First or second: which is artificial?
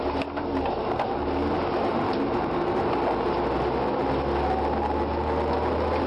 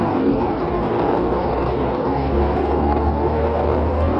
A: second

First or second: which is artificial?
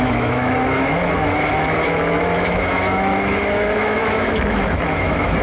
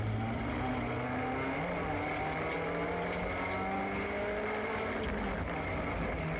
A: first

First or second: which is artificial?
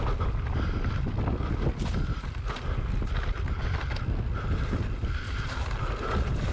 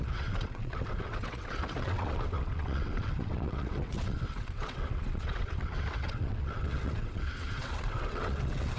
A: second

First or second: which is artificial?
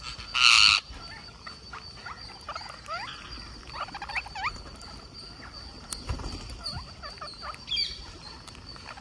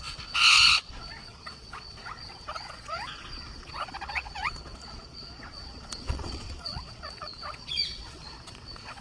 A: second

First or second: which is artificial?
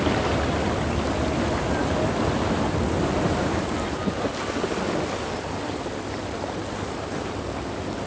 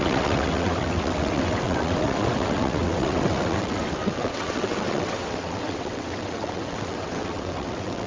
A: second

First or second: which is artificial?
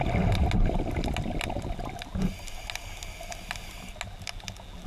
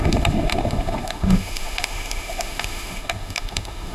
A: second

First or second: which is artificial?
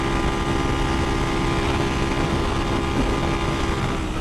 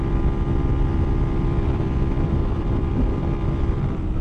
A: second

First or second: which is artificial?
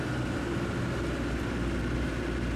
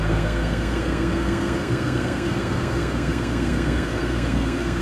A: second